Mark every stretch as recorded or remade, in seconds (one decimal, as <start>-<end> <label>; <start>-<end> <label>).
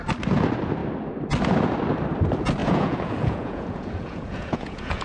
0.0-2.6 recorded; 2.6-5.0 remade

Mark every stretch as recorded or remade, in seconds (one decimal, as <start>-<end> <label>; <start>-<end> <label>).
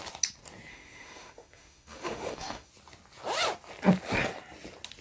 0.0-0.7 recorded; 0.7-2.7 remade; 2.7-5.0 recorded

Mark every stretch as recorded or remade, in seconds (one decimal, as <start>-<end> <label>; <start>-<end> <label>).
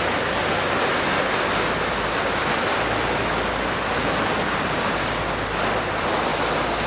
0.0-6.9 recorded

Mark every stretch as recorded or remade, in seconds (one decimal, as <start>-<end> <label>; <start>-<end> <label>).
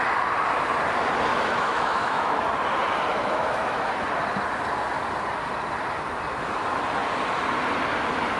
0.0-1.3 recorded; 1.3-2.4 remade; 2.4-3.1 recorded; 3.1-3.9 remade; 3.9-8.4 recorded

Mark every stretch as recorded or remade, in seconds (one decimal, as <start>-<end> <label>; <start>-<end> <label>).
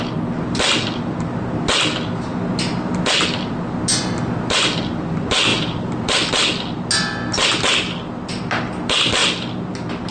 0.0-5.5 recorded; 5.5-6.2 remade; 6.2-10.1 recorded